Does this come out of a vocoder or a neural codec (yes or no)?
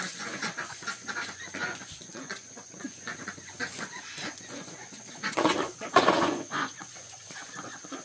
yes